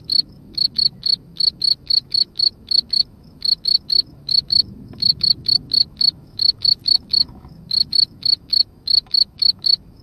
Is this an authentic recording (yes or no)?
no